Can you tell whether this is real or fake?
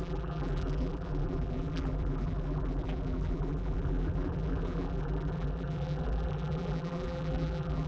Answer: fake